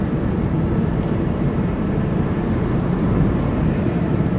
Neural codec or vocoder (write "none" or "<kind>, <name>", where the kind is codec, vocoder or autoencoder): vocoder, BigVGAN v2